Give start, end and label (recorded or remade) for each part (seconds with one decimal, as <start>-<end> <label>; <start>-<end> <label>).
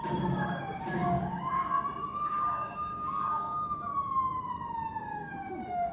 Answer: 0.0-5.9 remade